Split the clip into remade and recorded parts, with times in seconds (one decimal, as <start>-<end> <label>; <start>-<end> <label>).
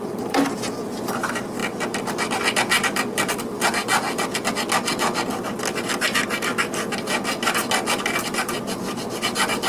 0.0-1.6 recorded; 1.6-3.3 remade; 3.3-6.5 recorded; 6.5-7.6 remade; 7.6-9.7 recorded